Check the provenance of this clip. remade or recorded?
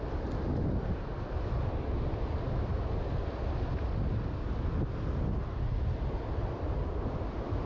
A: recorded